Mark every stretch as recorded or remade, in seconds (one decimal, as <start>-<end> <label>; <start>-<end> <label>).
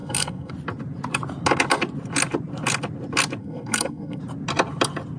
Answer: 0.0-0.5 remade; 0.5-3.4 recorded; 3.4-4.2 remade; 4.2-5.2 recorded